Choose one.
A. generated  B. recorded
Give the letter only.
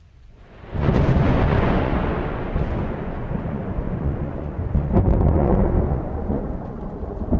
A